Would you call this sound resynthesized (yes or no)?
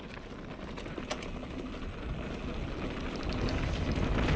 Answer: no